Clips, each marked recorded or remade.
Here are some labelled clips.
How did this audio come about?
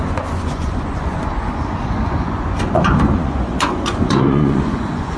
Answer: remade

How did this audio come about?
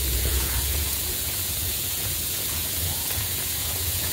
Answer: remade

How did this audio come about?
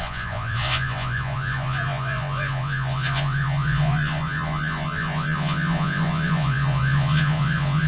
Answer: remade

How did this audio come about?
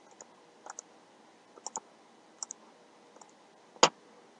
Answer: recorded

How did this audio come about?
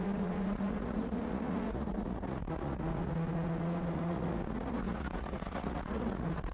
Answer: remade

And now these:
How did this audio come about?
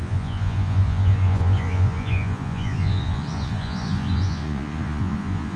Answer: remade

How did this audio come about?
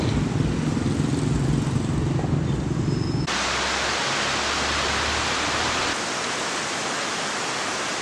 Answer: recorded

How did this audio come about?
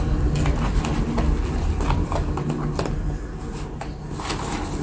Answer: recorded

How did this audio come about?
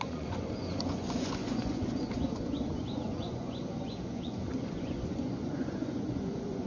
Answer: remade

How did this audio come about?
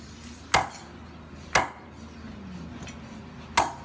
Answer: recorded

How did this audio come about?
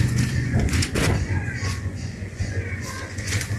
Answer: remade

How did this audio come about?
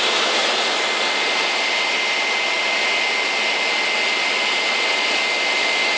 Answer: recorded